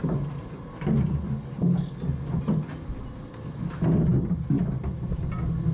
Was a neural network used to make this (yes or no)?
no